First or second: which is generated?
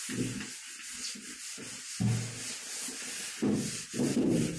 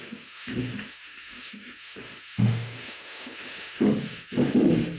second